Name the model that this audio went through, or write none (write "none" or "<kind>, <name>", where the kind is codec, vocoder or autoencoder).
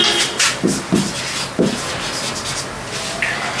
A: none